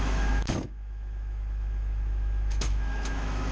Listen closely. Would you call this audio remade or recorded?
remade